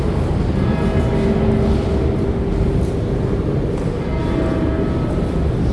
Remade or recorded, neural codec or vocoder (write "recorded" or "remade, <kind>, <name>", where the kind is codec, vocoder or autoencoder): recorded